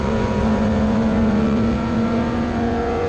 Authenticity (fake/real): fake